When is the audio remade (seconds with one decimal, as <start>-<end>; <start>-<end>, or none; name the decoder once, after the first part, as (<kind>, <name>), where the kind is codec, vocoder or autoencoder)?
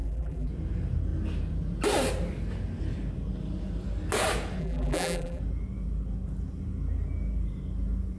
0.0-0.5 (vocoder, BigVGAN v2); 4.6-5.4